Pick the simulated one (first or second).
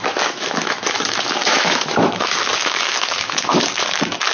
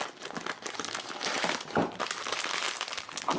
first